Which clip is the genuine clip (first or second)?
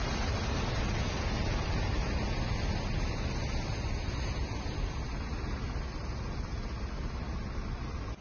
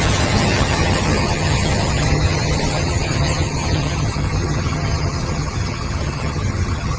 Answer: first